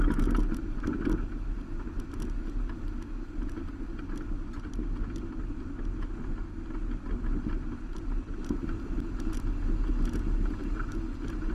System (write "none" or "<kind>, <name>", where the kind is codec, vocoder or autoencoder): none